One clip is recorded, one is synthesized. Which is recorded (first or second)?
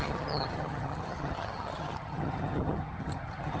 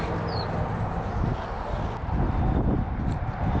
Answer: second